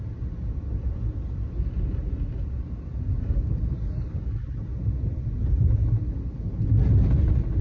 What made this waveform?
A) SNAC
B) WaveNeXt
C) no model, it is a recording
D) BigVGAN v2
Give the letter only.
C